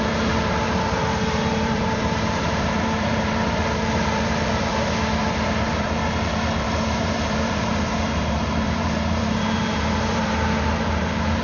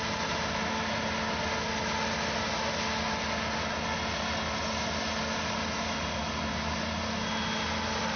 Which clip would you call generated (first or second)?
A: first